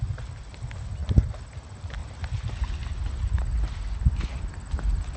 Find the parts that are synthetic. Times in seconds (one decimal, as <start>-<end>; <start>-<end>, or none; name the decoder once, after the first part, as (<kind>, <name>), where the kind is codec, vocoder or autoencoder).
none